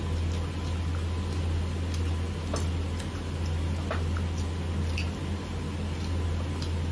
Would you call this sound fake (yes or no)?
no